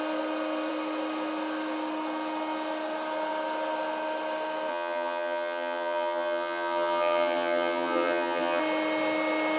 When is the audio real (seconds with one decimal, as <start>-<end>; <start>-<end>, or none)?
0.0-4.7; 8.6-9.6